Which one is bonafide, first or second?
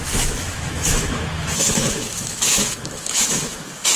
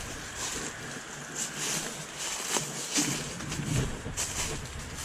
second